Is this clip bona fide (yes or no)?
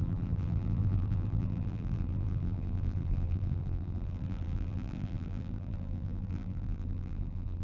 no